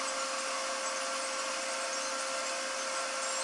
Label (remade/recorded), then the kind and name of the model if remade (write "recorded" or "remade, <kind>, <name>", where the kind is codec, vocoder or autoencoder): recorded